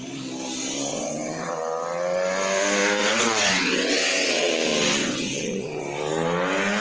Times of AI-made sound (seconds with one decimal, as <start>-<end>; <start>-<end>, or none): 0.9-1.5; 3.0-4.5; 5.0-5.8